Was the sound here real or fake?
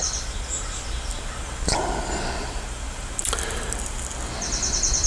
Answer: real